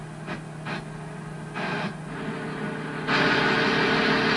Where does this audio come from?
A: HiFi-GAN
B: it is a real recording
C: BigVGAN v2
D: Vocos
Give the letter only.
B